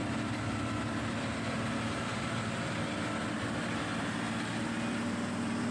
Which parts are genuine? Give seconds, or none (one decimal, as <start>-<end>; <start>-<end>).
0.0-5.7